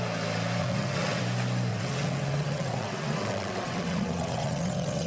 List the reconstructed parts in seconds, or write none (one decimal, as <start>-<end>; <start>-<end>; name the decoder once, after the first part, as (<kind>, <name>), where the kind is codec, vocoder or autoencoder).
0.6-1.2 (vocoder, WaveNeXt); 1.7-5.1